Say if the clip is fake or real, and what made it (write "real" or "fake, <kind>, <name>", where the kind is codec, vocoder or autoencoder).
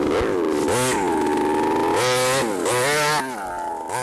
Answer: real